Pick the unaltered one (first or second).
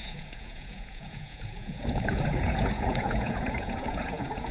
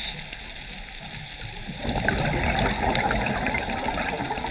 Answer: second